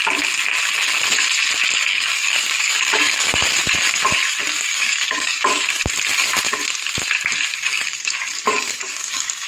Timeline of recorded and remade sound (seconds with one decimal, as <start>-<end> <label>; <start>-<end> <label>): 0.0-1.9 recorded; 1.9-3.3 remade; 3.3-4.7 recorded; 4.7-5.8 remade; 5.8-7.5 recorded; 7.5-9.5 remade